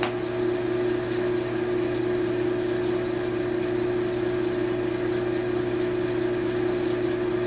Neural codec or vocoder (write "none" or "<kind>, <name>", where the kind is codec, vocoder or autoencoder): none